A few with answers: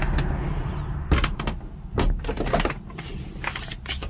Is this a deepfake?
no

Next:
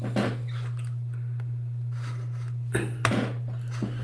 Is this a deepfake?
no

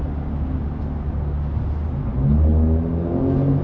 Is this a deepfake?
no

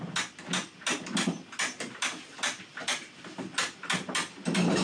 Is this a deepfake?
no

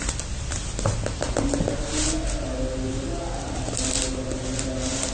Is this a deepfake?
no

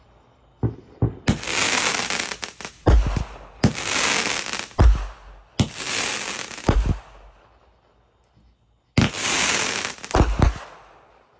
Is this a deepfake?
no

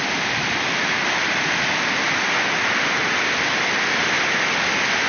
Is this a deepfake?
no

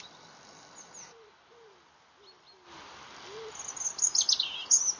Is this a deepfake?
no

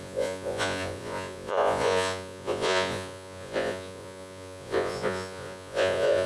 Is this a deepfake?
yes